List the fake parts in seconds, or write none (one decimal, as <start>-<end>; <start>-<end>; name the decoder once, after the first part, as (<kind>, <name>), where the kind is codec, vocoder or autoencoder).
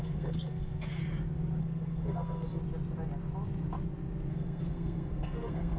0.0-1.0 (codec, SNAC); 1.6-2.6; 4.3-5.8